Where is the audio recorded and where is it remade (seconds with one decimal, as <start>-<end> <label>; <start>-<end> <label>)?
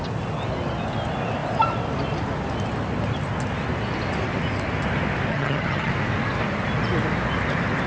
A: 0.0-5.3 recorded; 5.3-5.9 remade; 5.9-7.9 recorded